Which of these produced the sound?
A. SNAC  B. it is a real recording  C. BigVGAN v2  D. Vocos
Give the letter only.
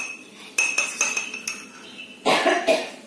B